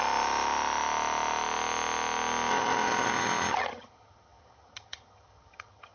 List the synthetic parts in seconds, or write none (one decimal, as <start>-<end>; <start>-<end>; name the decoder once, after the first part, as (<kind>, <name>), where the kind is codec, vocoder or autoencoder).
2.5-5.9 (vocoder, HiFi-GAN)